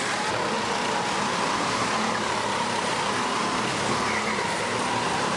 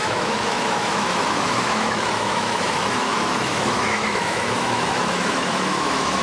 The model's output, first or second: second